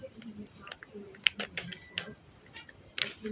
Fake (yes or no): no